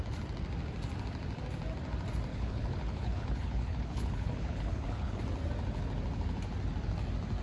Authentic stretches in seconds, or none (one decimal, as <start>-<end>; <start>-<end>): 0.0-2.3; 5.2-7.4